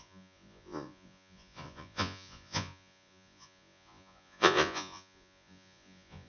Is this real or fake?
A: fake